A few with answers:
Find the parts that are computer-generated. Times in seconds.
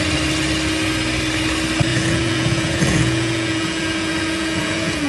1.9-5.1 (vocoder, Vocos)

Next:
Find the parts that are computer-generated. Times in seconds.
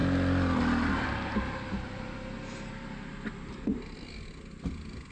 none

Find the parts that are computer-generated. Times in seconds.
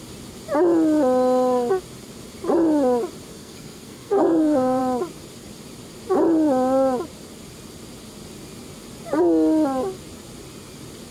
3.3-4.8 (codec, SNAC)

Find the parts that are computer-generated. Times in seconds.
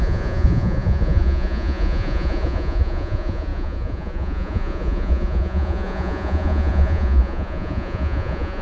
0.0-8.6 (vocoder, Vocos)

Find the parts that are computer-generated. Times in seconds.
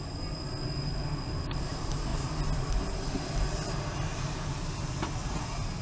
none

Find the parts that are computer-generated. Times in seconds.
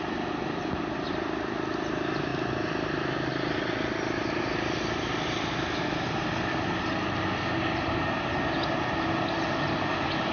none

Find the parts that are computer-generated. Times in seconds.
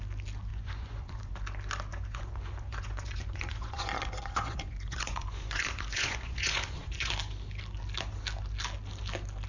0.5-1.3 (vocoder, Vocos); 1.9-7.1